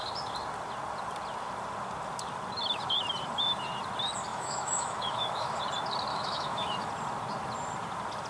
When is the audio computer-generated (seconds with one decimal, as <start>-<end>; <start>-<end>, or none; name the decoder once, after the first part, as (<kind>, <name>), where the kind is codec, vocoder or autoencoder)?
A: 4.3-5.6 (autoencoder, DAC-VAE); 6.1-6.9